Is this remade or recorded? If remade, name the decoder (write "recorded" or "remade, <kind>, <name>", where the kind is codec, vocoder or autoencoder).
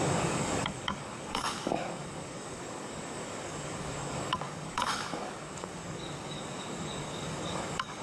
remade, codec, DAC